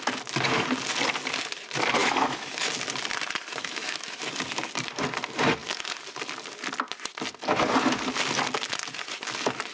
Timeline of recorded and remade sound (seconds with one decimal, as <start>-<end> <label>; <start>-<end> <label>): 0.0-2.0 recorded; 2.0-2.7 remade; 2.7-3.6 recorded; 3.6-4.2 remade; 4.2-9.7 recorded